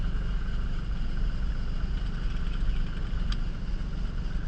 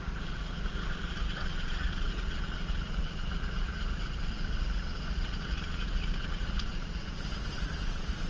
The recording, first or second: first